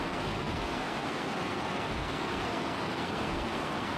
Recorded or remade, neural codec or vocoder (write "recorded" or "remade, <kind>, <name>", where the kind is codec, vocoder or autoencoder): remade, codec, SNAC